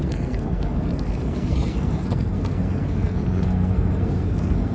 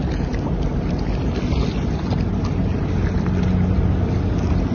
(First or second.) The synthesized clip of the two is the first